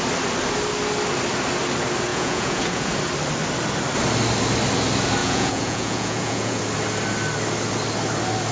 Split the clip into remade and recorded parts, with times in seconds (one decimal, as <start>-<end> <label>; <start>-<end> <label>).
0.0-2.1 recorded; 2.1-2.9 remade; 2.9-5.2 recorded; 5.2-6.6 remade; 6.6-8.5 recorded